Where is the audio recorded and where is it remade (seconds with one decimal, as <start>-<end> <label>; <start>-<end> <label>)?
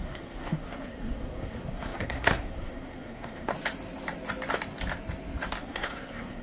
0.0-3.5 remade; 3.5-5.6 recorded; 5.6-6.4 remade